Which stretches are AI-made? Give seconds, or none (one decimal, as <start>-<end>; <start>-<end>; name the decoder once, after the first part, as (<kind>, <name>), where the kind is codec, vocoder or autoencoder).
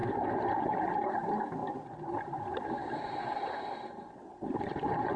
none